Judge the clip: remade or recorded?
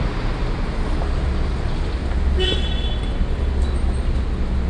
recorded